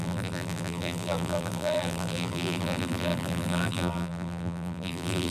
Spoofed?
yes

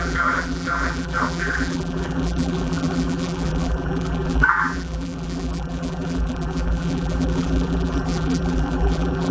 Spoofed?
yes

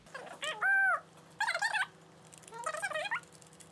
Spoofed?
no